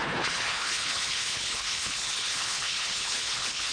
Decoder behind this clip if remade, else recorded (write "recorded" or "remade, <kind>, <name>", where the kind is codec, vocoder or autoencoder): remade, codec, HILCodec